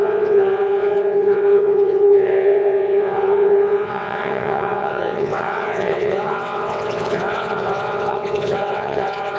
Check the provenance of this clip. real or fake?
fake